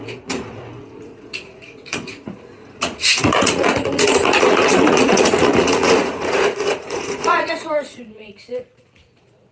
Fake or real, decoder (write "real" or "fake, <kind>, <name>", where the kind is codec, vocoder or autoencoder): fake, vocoder, Vocos